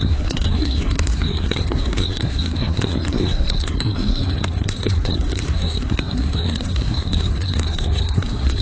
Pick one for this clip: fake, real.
fake